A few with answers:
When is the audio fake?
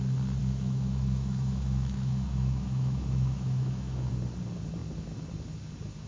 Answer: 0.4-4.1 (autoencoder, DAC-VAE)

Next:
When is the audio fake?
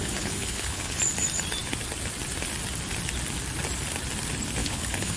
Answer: 0.0-1.0 (codec, HILCodec); 4.6-5.2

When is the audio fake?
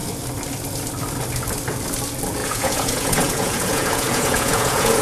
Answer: 2.4-5.0 (vocoder, Vocos)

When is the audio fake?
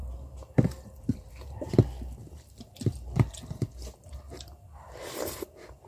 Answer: none